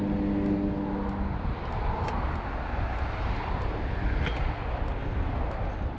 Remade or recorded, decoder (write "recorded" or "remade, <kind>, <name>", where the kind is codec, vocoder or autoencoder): recorded